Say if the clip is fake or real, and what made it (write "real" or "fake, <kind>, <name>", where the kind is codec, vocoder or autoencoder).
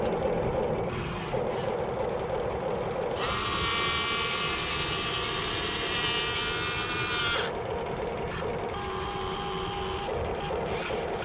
real